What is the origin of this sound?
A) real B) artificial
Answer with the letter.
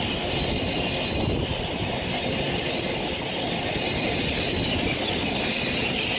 A